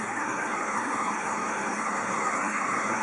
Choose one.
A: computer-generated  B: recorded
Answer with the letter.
A